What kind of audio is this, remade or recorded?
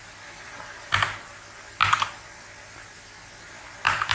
recorded